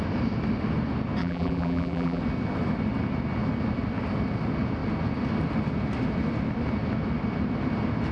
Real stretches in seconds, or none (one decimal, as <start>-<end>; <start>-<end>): 0.0-1.2; 2.2-8.1